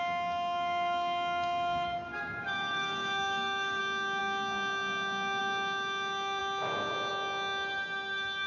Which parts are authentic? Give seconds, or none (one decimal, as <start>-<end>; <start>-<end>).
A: 0.0-2.1; 3.8-8.5